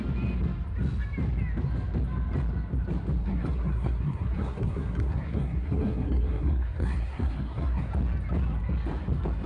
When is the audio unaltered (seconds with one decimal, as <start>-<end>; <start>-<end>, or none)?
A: 0.0-3.2; 7.9-9.5